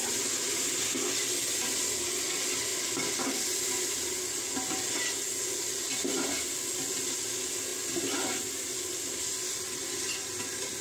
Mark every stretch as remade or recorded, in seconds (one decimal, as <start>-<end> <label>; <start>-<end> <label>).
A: 0.0-10.8 recorded

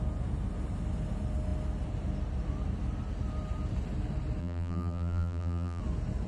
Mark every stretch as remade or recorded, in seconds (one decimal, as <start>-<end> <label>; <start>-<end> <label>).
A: 0.0-4.4 recorded; 4.4-5.8 remade; 5.8-6.3 recorded

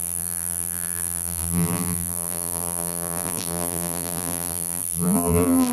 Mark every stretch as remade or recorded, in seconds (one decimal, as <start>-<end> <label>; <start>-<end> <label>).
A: 0.0-5.7 remade

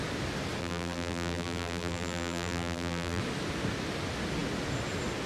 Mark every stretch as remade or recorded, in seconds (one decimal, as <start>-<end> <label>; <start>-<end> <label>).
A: 0.0-0.6 recorded; 0.6-3.2 remade; 3.2-5.3 recorded

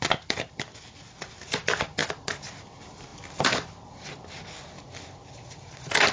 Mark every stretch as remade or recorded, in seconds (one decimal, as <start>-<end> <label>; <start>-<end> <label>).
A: 0.0-2.0 remade; 2.0-2.6 recorded; 2.6-6.1 remade

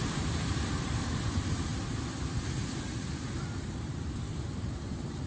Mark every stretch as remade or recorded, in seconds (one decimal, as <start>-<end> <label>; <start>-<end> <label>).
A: 0.0-1.7 remade; 1.7-3.6 recorded; 3.6-5.3 remade